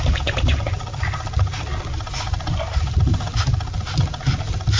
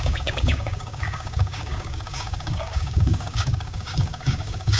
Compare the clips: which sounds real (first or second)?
first